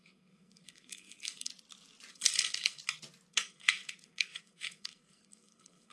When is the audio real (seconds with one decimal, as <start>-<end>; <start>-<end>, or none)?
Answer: 1.5-2.1; 2.8-3.3